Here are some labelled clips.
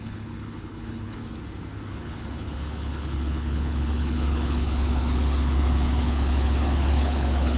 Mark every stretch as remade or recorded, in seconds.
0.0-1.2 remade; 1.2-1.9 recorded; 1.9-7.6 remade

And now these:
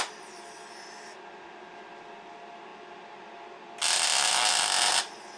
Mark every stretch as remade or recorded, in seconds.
0.0-5.4 recorded